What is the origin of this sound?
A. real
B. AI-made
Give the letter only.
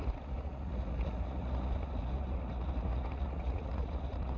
B